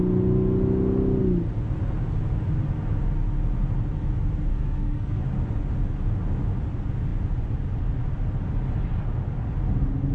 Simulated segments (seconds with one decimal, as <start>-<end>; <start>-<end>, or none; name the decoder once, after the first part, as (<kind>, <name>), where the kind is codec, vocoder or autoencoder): 4.5-5.2 (codec, SNAC)